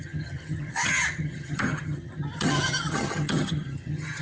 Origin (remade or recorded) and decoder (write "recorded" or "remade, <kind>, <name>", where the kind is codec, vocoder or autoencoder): remade, vocoder, HiFi-GAN